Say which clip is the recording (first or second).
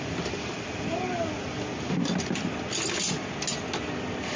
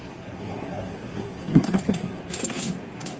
first